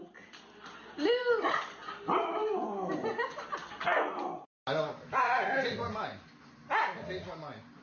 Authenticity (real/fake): real